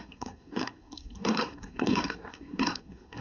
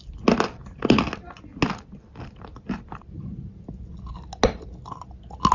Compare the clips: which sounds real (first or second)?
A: second